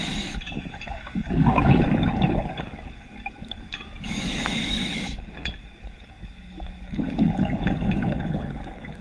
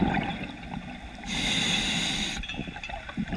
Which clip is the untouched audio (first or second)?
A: second